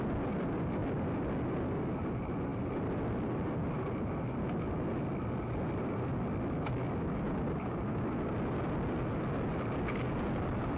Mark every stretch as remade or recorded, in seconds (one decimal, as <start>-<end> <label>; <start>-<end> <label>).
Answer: 0.0-10.8 recorded